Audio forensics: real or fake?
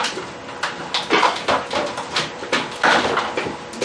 real